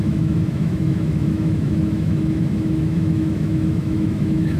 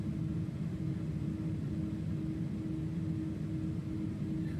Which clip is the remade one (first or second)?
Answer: first